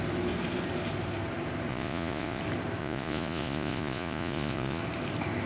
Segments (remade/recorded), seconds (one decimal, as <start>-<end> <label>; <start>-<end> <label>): 0.0-1.7 recorded; 1.7-2.4 remade; 2.4-2.8 recorded; 2.8-4.8 remade; 4.8-5.5 recorded